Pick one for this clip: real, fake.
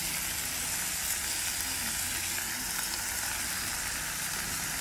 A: real